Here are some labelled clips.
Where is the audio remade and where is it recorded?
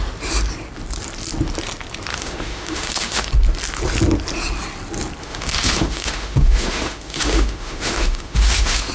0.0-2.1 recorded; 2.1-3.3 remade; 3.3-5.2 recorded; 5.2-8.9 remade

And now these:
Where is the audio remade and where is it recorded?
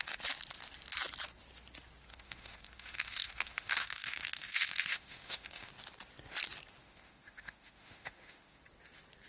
0.0-2.1 recorded; 2.1-5.7 remade; 5.7-6.8 recorded; 6.8-8.6 remade; 8.6-9.3 recorded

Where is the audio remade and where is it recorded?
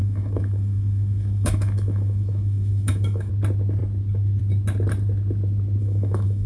0.0-3.3 remade; 3.3-5.8 recorded; 5.8-6.5 remade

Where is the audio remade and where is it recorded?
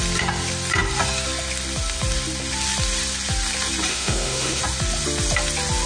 0.0-3.9 recorded; 3.9-4.6 remade; 4.6-5.9 recorded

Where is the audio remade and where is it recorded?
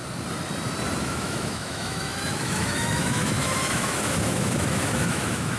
0.0-1.0 recorded; 1.0-5.6 remade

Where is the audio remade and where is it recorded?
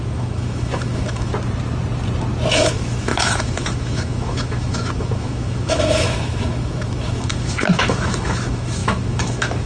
0.0-1.3 remade; 1.3-2.5 recorded; 2.5-9.7 remade